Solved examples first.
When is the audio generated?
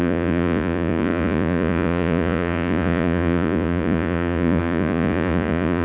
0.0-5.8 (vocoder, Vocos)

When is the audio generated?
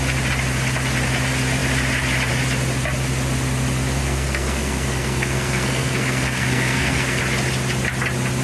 4.0-7.2 (codec, SNAC)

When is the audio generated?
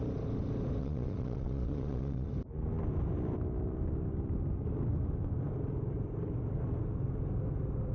0.8-2.3 (vocoder, Vocos)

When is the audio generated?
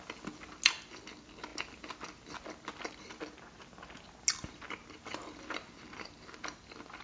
none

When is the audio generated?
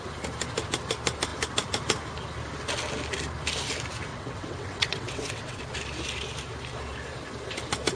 4.1-5.6 (vocoder, WaveNeXt)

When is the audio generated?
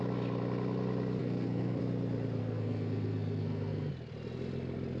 1.2-1.8 (codec, SNAC); 2.4-3.9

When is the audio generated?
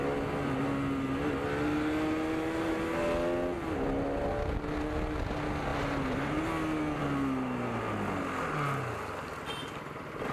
none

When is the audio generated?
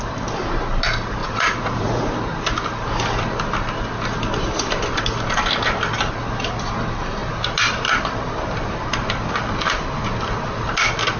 1.2-2.1 (vocoder, Vocos)